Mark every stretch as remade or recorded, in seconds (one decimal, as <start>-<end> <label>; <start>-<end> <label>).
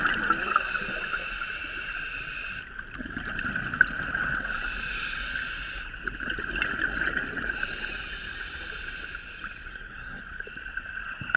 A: 0.0-9.7 recorded; 9.7-10.2 remade; 10.2-11.4 recorded